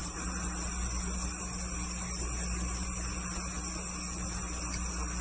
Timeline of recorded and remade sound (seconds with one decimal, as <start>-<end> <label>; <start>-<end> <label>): 0.0-5.2 recorded